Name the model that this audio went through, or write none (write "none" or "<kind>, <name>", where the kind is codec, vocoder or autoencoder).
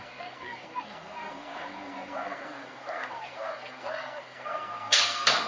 codec, SNAC